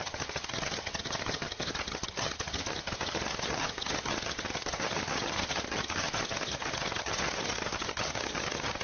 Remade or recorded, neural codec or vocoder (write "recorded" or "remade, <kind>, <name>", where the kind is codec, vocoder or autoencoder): remade, vocoder, HiFi-GAN